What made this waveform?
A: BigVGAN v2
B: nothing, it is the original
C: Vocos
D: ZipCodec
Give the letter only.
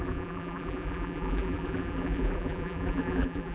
A